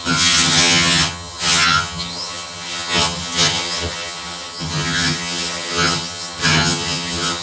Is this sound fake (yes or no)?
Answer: yes